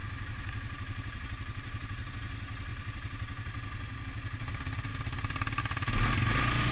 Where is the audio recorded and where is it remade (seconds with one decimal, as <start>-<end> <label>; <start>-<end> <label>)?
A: 0.0-2.1 remade; 2.1-2.7 recorded; 2.7-4.0 remade; 4.0-6.7 recorded